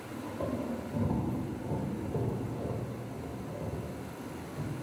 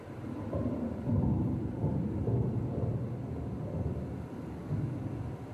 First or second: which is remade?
second